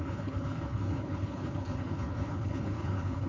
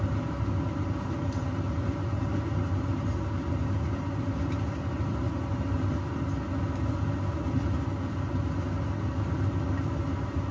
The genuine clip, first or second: second